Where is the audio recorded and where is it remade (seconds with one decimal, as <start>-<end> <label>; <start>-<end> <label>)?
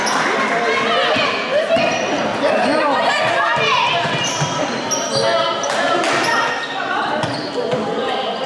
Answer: 0.0-2.3 recorded; 2.3-3.6 remade; 3.6-8.5 recorded